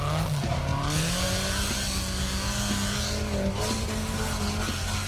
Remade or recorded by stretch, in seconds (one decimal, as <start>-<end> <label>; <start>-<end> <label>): 0.0-5.1 recorded